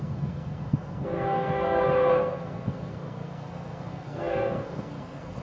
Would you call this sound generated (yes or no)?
yes